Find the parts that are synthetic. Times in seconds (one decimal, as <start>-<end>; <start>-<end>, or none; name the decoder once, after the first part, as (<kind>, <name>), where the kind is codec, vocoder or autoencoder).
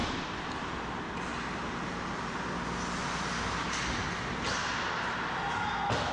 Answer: 0.0-0.5 (vocoder, BigVGAN v2)